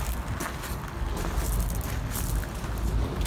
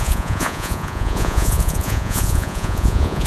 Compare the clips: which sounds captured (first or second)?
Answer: first